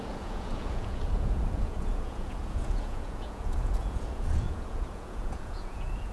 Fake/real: fake